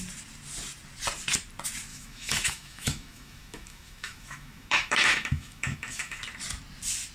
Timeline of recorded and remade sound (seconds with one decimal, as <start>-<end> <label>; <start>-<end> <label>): 0.0-1.9 recorded; 1.9-6.2 remade; 6.2-7.1 recorded

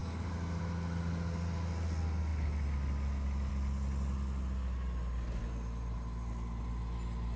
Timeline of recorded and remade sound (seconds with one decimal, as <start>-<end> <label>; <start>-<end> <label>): 0.0-7.4 recorded

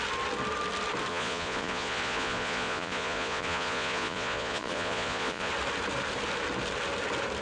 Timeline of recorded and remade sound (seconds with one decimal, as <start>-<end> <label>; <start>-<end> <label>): 0.0-1.1 recorded; 1.1-5.5 remade; 5.5-7.4 recorded

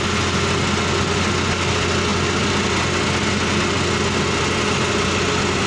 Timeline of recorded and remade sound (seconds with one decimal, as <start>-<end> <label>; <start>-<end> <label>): 0.0-5.7 recorded

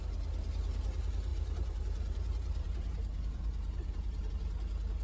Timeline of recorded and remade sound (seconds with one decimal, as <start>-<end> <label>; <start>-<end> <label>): 0.0-1.3 recorded; 1.3-4.3 remade; 4.3-5.0 recorded

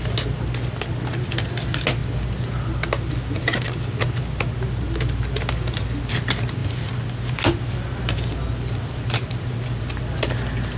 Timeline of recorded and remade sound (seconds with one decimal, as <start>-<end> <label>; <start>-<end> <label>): 0.0-10.8 recorded

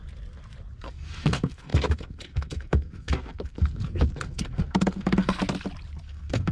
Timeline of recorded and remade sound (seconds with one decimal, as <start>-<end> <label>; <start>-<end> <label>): 0.0-0.8 recorded; 0.8-5.4 remade; 5.4-6.0 recorded; 6.0-6.5 remade

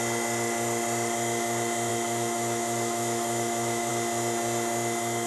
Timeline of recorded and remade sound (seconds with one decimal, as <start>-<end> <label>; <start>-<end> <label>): 0.0-1.9 recorded; 1.9-3.9 remade; 3.9-5.3 recorded